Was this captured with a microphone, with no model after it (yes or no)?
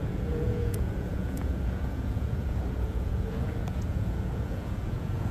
no